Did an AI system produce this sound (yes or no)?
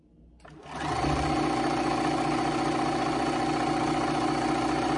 no